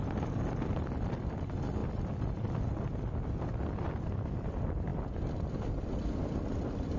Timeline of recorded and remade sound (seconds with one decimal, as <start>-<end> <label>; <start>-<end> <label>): 0.0-7.0 recorded